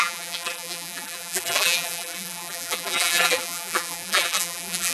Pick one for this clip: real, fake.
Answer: fake